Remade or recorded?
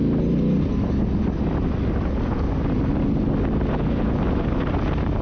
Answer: recorded